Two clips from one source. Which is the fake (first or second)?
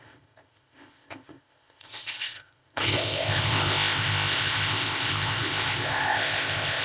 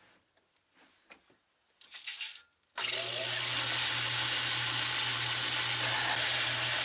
first